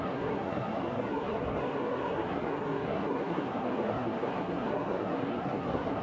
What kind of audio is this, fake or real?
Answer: fake